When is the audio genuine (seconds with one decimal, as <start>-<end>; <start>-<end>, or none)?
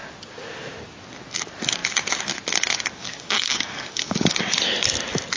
0.0-3.0; 4.4-5.4